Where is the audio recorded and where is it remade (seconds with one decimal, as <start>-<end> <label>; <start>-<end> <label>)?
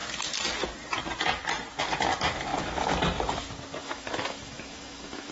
0.0-3.8 recorded; 3.8-5.3 remade